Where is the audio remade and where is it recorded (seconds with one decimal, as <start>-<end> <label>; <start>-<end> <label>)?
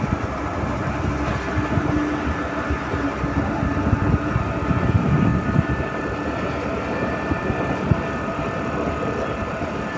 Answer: 0.0-10.0 recorded